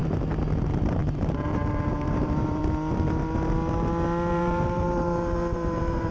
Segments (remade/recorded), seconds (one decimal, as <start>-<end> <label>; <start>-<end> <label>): 0.0-0.6 recorded; 0.6-2.6 remade; 2.6-4.3 recorded; 4.3-6.1 remade